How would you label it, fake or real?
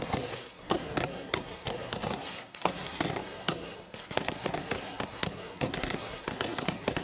fake